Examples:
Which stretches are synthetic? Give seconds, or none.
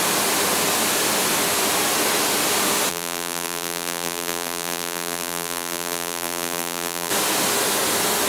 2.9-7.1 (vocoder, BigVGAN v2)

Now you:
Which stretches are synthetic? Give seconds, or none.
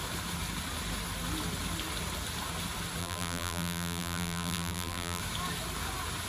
3.0-5.2 (vocoder, BigVGAN v2)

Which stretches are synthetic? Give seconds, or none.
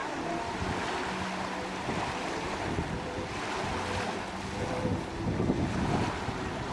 none